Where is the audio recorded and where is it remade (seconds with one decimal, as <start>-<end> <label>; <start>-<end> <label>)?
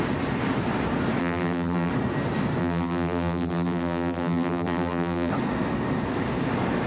0.0-1.2 recorded; 1.2-1.9 remade; 1.9-2.6 recorded; 2.6-5.3 remade; 5.3-6.9 recorded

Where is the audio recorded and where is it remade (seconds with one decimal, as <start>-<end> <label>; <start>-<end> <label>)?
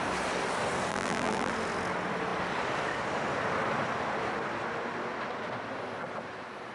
0.0-0.9 recorded; 0.9-1.5 remade; 1.5-6.7 recorded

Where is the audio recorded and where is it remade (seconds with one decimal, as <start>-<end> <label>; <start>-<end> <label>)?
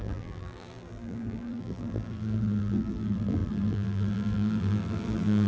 0.0-5.5 remade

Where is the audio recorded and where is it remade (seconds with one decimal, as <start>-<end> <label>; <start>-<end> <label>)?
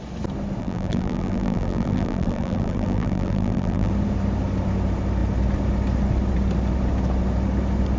0.0-0.6 recorded; 0.6-3.9 remade; 3.9-8.0 recorded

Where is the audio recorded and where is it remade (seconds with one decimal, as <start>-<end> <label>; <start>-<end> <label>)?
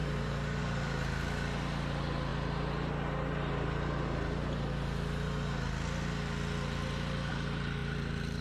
0.0-0.6 remade; 0.6-7.8 recorded; 7.8-8.4 remade